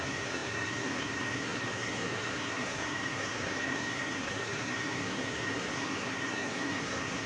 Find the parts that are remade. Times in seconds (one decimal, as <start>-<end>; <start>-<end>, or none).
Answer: 0.0-7.3